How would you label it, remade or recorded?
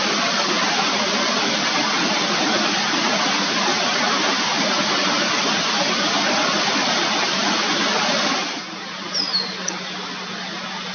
recorded